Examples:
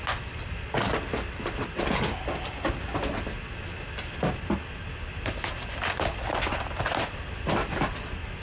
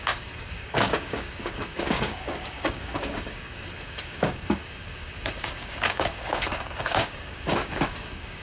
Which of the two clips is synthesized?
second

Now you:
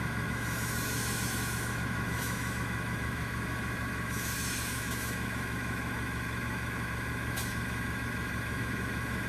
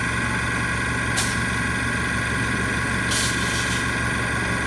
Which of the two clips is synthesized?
first